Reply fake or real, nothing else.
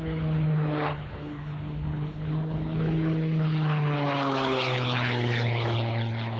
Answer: fake